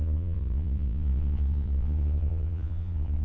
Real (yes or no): no